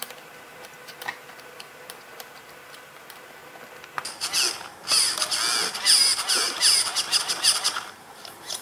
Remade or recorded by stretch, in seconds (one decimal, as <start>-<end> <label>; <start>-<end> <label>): 0.0-3.4 remade; 3.4-6.3 recorded; 6.3-8.6 remade